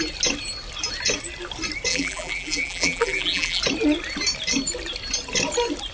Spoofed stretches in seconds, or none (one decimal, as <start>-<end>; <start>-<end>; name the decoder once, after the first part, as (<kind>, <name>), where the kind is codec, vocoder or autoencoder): 1.9-3.6 (vocoder, BigVGAN v2)